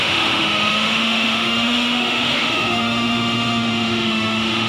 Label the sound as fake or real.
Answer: fake